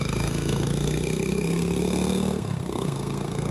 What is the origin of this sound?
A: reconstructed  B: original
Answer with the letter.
A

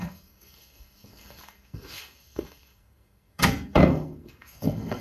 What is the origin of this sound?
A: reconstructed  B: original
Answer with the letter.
A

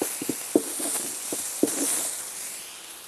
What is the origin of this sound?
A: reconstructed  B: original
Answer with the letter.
B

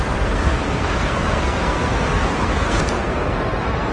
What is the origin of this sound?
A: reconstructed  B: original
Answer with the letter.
A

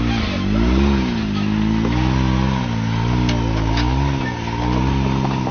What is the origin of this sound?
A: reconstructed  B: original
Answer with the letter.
B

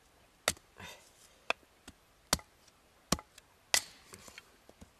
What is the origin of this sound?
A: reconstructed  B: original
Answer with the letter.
B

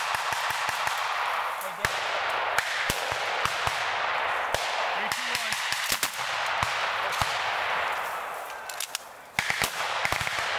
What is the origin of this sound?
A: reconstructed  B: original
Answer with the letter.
B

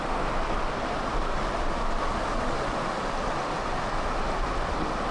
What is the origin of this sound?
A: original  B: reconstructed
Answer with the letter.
A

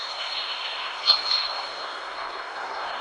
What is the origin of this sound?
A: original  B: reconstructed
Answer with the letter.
B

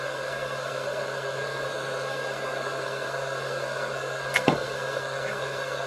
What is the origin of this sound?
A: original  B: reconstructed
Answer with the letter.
B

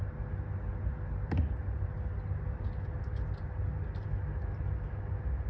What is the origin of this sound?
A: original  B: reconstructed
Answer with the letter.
A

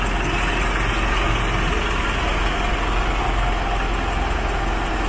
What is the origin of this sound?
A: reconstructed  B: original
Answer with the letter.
B